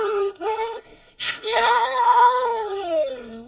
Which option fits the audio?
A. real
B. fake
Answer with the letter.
B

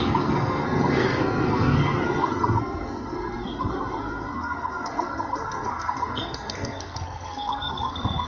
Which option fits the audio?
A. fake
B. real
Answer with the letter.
A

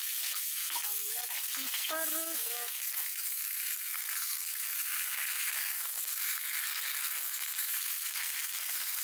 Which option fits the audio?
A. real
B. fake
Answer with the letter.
B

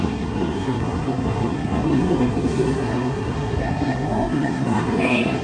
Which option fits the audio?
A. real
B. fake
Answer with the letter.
B